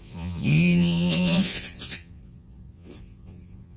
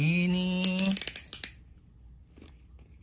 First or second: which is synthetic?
first